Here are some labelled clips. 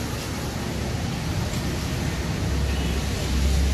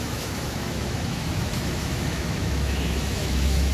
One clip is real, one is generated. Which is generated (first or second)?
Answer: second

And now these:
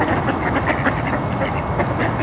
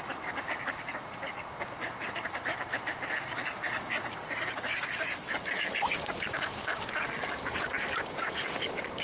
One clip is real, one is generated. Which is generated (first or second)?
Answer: second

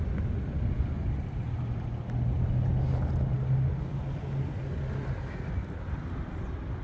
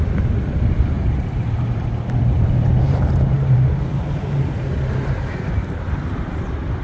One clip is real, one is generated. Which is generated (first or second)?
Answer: second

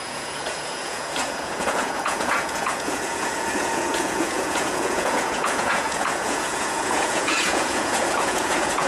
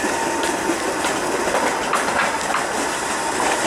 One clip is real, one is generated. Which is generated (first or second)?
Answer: first